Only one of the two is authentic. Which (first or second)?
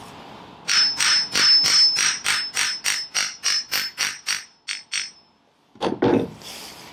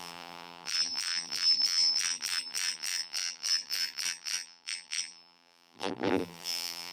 first